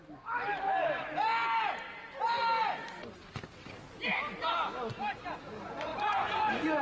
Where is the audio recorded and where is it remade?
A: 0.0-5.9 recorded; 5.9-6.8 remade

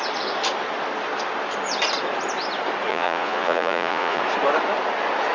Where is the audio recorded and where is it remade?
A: 0.0-2.9 recorded; 2.9-4.2 remade; 4.2-5.3 recorded

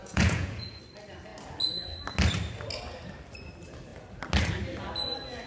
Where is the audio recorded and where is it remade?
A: 0.0-0.8 remade; 0.8-5.5 recorded

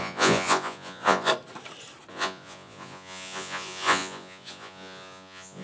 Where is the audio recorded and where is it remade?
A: 0.0-1.3 remade; 1.3-2.1 recorded; 2.1-5.6 remade

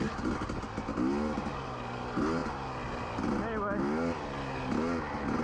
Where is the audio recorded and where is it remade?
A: 0.0-5.4 recorded